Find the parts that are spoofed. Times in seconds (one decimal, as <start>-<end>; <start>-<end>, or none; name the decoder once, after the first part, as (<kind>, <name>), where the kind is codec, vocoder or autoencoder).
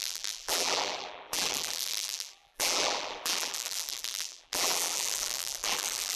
0.0-6.2 (vocoder, BigVGAN v2)